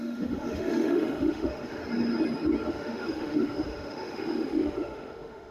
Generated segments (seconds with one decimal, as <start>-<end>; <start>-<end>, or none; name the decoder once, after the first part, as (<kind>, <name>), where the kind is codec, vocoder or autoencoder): 0.0-1.8 (autoencoder, DAC-VAE); 2.7-5.5